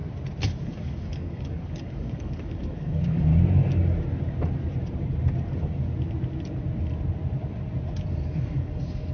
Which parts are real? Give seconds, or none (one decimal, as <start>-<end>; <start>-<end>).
0.0-0.6; 3.3-8.1